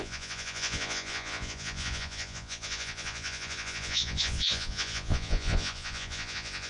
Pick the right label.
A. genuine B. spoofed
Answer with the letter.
B